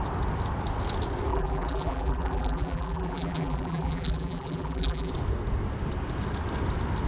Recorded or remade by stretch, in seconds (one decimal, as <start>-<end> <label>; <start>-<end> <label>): 0.0-1.3 recorded; 1.3-5.1 remade; 5.1-7.1 recorded